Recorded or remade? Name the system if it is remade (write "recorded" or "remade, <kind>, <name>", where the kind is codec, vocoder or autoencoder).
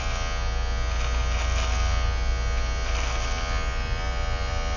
recorded